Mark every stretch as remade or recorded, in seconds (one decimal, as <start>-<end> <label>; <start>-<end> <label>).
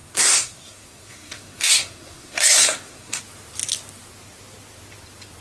0.0-3.2 remade; 3.2-5.4 recorded